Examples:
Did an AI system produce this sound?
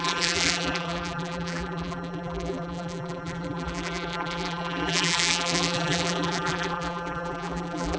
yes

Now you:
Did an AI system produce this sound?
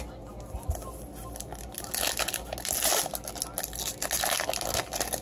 no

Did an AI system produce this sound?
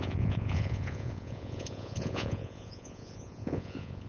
yes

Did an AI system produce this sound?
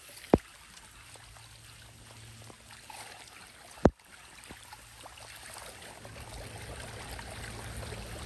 no